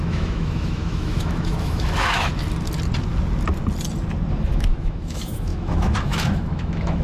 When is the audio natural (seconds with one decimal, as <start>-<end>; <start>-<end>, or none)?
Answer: 2.3-4.4